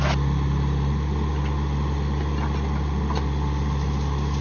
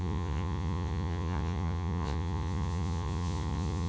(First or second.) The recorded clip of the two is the first